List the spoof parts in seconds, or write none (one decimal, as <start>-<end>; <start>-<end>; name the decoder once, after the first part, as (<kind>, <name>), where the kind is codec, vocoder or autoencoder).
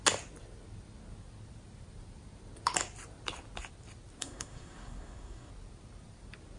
4.2-5.5 (codec, SNAC)